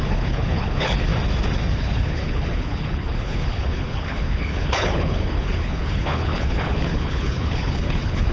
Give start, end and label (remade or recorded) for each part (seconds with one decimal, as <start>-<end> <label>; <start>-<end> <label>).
0.0-1.1 remade; 1.1-1.8 recorded; 1.8-8.3 remade